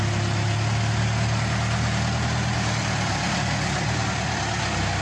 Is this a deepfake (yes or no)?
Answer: no